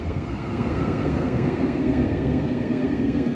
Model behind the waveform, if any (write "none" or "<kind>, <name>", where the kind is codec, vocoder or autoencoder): codec, SNAC